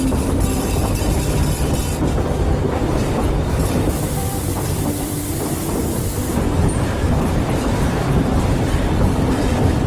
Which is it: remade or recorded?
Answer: remade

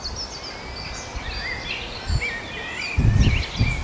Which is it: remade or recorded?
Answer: recorded